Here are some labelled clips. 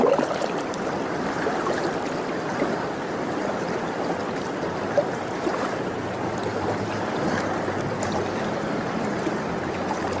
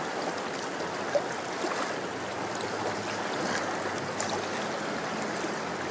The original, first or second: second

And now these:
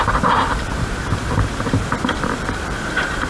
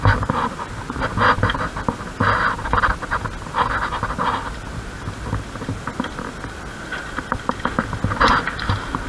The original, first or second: second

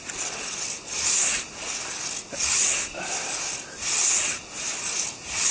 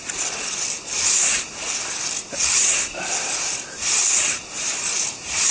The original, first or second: first